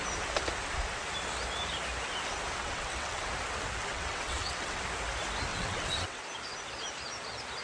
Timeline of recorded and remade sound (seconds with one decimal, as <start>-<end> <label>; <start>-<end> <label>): 0.0-2.6 recorded; 2.6-3.3 remade; 3.3-3.9 recorded; 3.9-4.8 remade; 4.8-5.5 recorded; 5.5-6.2 remade; 6.2-7.6 recorded